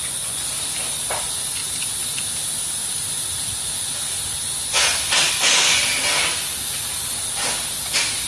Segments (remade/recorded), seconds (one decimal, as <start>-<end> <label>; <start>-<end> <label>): 0.0-0.5 remade; 0.5-1.2 recorded; 1.2-1.6 remade; 1.6-5.3 recorded; 5.3-5.8 remade; 5.8-8.3 recorded